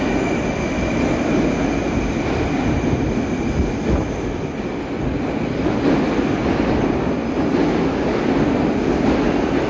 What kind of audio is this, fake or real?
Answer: real